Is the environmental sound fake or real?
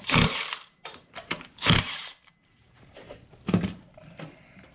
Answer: fake